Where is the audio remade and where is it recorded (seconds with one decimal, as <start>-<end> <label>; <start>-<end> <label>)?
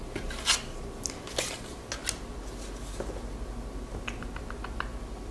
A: 0.0-5.3 recorded